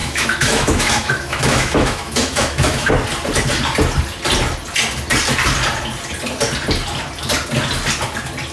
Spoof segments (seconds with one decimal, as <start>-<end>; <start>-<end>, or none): 0.0-2.9

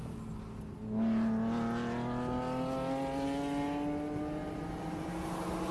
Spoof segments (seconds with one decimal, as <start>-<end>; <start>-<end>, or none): 4.4-5.1

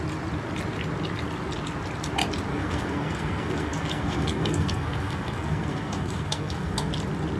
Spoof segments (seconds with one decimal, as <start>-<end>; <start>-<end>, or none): 2.5-6.9

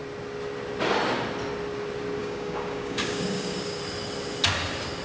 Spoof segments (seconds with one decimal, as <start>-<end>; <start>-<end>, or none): 2.2-3.8

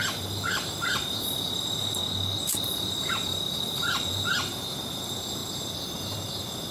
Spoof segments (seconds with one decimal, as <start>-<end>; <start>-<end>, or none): 0.0-2.0; 2.9-6.7

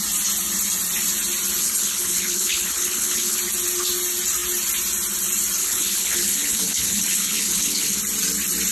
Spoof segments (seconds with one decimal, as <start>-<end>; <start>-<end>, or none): 1.6-3.4; 5.6-8.0

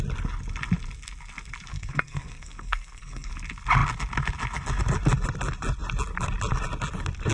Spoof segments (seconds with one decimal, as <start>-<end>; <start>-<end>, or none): 1.7-3.3